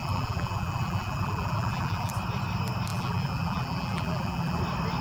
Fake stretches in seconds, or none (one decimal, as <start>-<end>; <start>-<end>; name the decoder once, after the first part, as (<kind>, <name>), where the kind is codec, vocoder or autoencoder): 0.0-2.1 (vocoder, BigVGAN v2); 2.9-4.6